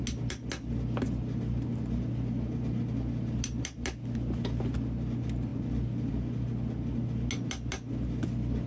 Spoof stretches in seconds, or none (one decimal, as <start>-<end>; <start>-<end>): none